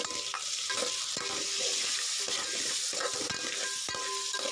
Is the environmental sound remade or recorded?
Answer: recorded